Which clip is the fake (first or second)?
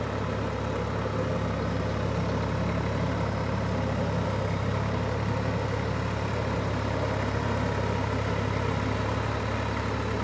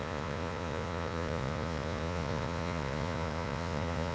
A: second